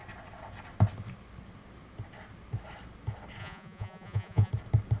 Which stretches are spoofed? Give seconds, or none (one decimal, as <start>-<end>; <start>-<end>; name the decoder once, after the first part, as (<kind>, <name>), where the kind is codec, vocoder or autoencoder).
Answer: 3.4-4.5 (vocoder, Vocos)